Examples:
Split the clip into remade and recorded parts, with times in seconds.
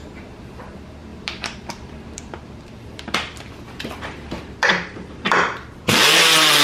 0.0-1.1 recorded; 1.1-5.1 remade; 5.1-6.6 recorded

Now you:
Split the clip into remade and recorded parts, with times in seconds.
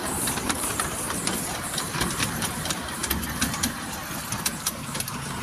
0.0-3.0 remade; 3.0-4.4 recorded; 4.4-5.4 remade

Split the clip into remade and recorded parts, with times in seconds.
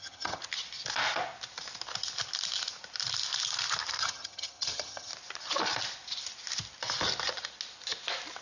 0.0-0.4 remade; 0.4-4.0 recorded; 4.0-5.1 remade; 5.1-8.4 recorded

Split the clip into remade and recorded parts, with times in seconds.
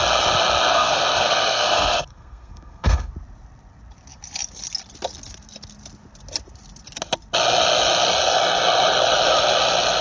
0.0-0.7 recorded; 0.7-3.1 remade; 3.1-10.0 recorded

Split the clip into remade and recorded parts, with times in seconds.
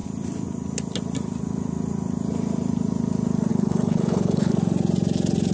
0.0-3.5 recorded; 3.5-4.5 remade; 4.5-5.5 recorded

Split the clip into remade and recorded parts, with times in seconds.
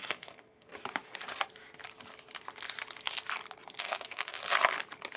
0.0-0.7 remade; 0.7-3.8 recorded; 3.8-4.4 remade; 4.4-5.2 recorded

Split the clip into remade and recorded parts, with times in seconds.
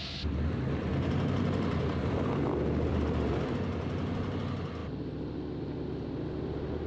0.0-2.9 recorded; 2.9-3.5 remade; 3.5-6.9 recorded